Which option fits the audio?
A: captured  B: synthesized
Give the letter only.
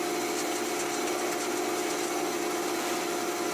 A